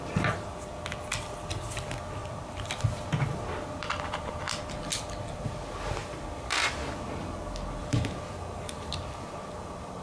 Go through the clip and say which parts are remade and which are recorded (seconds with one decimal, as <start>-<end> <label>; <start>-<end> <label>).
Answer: 0.0-6.0 recorded; 6.0-6.7 remade; 6.7-7.8 recorded; 7.8-8.9 remade; 8.9-10.0 recorded